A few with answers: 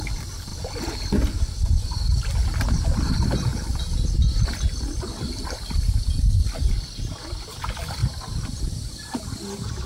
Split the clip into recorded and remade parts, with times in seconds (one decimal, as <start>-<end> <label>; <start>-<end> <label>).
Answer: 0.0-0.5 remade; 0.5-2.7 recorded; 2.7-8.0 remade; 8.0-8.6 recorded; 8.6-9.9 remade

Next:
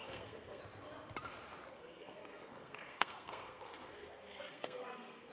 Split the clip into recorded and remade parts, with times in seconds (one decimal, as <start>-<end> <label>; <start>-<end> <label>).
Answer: 0.0-0.6 remade; 0.6-1.7 recorded; 1.7-5.3 remade

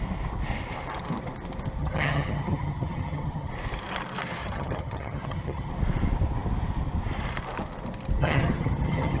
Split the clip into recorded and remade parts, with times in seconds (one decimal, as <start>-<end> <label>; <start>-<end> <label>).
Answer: 0.0-1.8 recorded; 1.8-3.5 remade; 3.5-4.4 recorded; 4.4-5.7 remade; 5.7-8.2 recorded; 8.2-9.2 remade